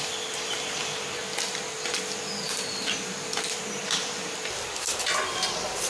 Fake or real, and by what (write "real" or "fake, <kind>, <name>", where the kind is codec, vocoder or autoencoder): real